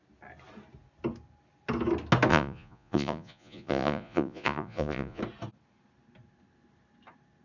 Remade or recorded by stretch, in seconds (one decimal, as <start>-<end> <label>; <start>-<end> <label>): 0.0-2.3 recorded; 2.3-5.2 remade; 5.2-7.4 recorded